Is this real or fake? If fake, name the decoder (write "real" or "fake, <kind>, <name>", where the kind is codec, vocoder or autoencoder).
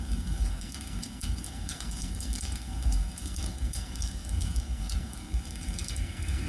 fake, codec, SNAC